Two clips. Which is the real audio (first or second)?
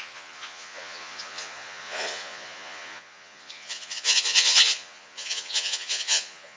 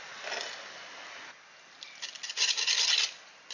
second